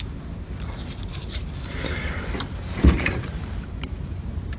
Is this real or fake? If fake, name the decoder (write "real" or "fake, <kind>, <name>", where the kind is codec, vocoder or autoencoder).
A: real